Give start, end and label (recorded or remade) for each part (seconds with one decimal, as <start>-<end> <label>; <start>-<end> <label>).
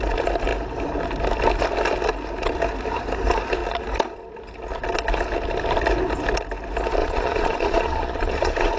0.0-7.0 recorded; 7.0-8.8 remade